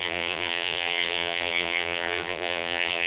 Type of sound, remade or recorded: remade